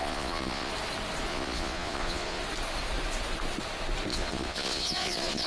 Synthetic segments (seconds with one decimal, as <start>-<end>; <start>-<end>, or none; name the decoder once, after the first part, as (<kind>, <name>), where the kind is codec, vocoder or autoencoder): 0.0-0.7 (vocoder, Vocos); 1.3-2.4; 4.1-5.5